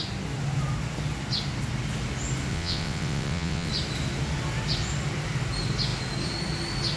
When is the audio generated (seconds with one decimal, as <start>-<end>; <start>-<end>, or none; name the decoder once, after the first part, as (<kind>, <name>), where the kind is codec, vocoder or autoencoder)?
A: 2.5-3.7 (vocoder, WaveNeXt)

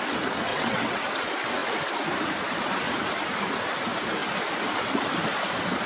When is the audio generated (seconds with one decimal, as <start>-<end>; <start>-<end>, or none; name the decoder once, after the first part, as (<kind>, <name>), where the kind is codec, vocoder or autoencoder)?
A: 0.5-1.0 (vocoder, WaveNeXt)